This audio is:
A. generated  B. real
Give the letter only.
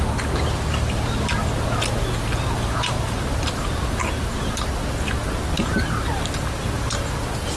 B